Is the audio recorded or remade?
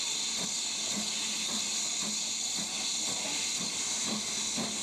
recorded